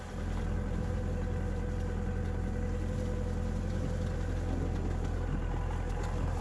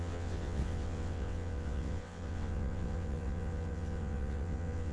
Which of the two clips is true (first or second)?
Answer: first